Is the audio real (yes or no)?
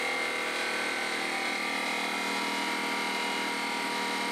yes